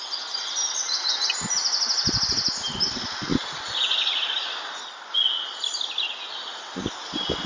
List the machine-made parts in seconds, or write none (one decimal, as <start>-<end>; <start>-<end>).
none